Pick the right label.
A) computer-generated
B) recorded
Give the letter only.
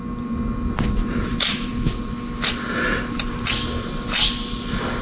B